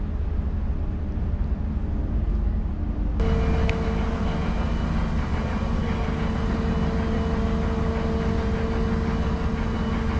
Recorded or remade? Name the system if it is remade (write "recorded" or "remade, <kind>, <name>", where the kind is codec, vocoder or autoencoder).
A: recorded